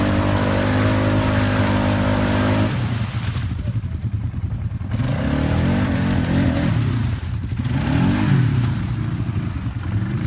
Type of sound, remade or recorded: recorded